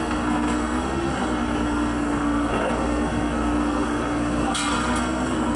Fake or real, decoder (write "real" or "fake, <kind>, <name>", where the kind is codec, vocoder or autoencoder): fake, codec, SNAC